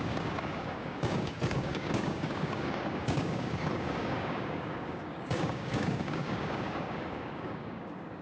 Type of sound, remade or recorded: remade